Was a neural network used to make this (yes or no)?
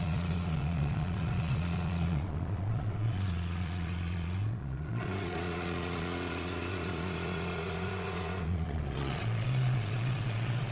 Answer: yes